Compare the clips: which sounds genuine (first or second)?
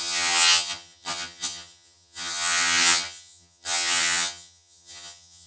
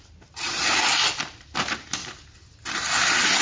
second